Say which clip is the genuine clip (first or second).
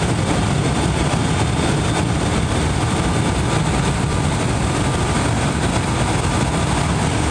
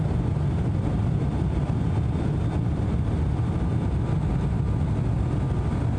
second